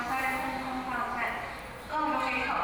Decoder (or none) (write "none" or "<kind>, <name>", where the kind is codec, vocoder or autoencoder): none